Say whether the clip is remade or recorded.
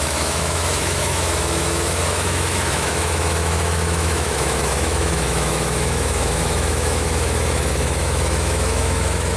remade